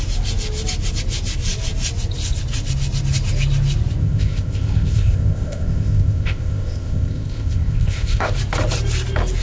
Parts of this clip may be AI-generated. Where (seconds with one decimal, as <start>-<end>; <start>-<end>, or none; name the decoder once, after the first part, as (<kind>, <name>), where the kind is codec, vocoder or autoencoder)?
4.0-8.3 (codec, ZipCodec)